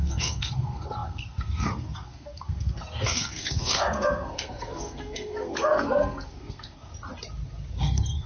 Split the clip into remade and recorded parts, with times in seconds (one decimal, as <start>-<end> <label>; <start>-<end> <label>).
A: 0.0-6.9 remade; 6.9-7.7 recorded; 7.7-8.3 remade